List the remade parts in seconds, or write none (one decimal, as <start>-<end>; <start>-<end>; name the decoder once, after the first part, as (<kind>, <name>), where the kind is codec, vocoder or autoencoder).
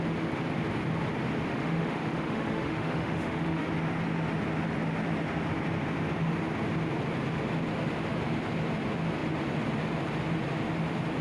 1.5-3.7 (autoencoder, DAC-VAE)